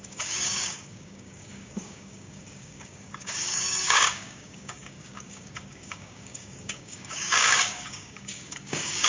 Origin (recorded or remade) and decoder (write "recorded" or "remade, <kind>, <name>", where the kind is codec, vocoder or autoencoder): remade, codec, DAC